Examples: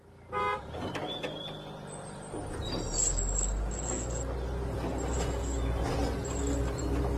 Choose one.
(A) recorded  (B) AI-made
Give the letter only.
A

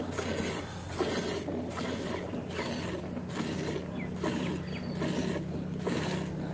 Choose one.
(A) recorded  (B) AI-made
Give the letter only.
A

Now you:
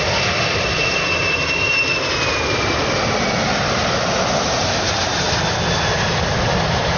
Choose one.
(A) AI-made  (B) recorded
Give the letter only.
B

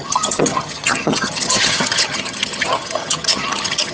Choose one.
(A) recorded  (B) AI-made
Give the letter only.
B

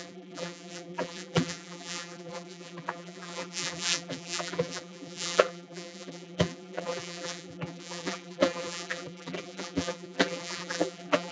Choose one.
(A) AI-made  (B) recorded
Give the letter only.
A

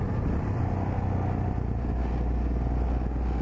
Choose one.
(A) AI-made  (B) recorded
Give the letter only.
B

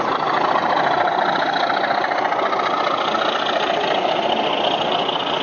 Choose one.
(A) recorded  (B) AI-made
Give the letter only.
A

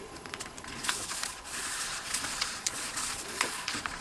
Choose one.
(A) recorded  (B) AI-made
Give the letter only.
B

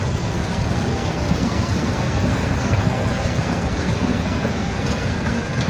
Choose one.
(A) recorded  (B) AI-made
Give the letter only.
B